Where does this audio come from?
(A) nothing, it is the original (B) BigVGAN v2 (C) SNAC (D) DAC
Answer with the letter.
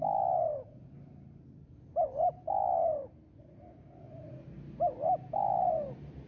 A